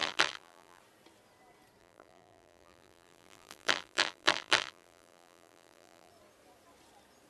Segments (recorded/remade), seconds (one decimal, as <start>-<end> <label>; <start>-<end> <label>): 0.0-0.8 remade; 0.8-1.8 recorded; 1.8-6.1 remade; 6.1-7.3 recorded